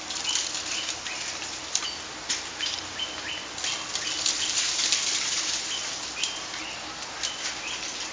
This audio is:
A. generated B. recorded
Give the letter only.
B